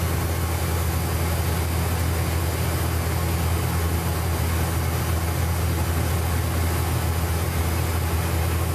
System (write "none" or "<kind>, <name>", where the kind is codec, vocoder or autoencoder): none